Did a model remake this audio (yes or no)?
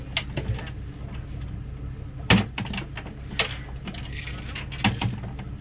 no